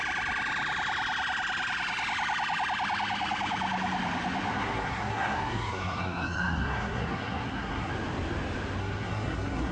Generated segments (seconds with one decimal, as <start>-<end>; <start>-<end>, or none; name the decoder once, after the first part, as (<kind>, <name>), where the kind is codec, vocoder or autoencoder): 4.5-7.9 (codec, SNAC); 8.8-9.7